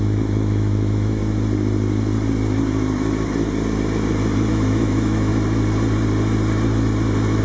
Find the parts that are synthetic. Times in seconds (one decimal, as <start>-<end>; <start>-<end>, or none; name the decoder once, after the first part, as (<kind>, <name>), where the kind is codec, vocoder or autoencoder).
0.0-1.2 (autoencoder, DAC-VAE); 4.5-5.3